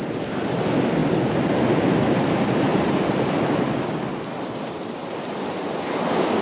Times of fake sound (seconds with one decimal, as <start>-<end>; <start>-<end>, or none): 1.0-1.8; 2.7-3.7; 5.0-5.7